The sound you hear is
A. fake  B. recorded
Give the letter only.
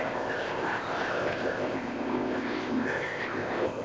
A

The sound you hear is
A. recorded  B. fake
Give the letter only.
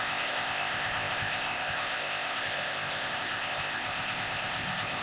B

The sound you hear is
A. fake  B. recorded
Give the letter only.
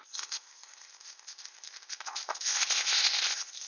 A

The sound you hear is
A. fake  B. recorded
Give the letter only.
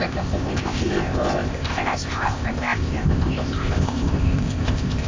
A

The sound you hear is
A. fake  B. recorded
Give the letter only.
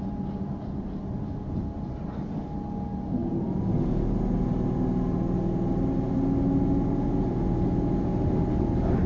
B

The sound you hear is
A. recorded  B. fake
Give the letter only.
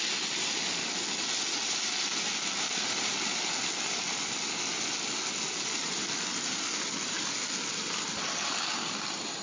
A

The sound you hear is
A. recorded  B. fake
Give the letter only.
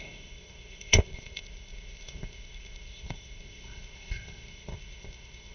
B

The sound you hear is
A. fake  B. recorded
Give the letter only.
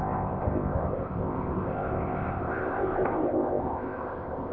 A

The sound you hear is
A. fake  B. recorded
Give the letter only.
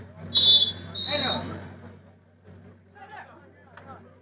B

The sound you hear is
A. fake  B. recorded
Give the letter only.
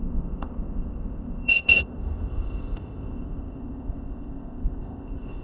A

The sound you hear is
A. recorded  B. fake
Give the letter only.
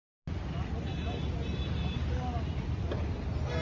A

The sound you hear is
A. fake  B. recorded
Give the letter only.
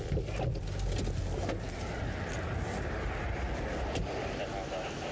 B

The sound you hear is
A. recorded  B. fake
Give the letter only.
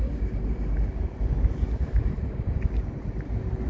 A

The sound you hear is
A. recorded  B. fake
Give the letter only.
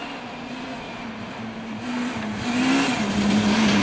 A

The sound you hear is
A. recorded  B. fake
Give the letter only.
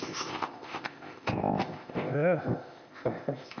B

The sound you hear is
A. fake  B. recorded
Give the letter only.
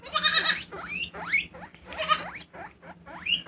B